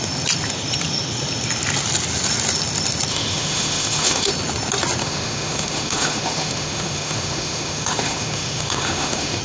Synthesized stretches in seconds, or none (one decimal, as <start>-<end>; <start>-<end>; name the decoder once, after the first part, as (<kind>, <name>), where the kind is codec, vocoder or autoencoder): 3.1-4.3 (autoencoder, DAC-VAE); 5.0-9.4